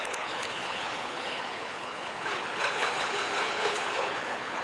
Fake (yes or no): yes